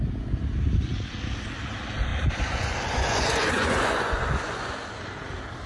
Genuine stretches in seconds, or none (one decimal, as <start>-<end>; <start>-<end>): 0.0-2.1; 4.7-5.7